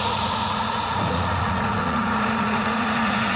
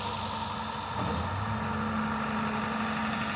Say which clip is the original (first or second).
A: second